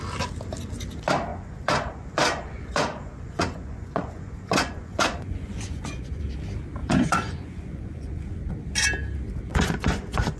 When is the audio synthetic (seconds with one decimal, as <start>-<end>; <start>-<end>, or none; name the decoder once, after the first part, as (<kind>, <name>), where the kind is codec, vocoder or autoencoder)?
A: 1.3-6.2 (vocoder, Vocos); 6.8-8.5; 9.5-10.4